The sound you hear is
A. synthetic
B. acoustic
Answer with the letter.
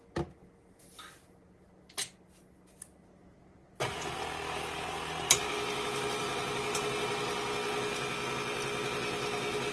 B